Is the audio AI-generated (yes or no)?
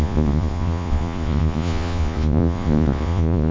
yes